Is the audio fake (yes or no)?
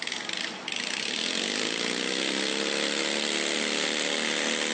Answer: no